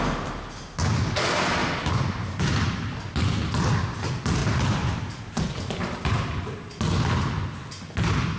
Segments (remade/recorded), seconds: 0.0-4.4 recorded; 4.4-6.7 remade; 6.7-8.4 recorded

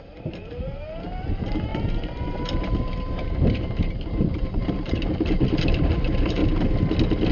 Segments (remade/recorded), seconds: 0.0-6.4 remade; 6.4-7.3 recorded

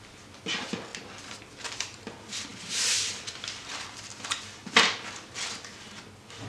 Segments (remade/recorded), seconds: 0.0-6.5 recorded

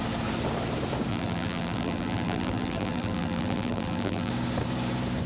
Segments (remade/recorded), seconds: 0.0-1.1 recorded; 1.1-4.3 remade; 4.3-5.3 recorded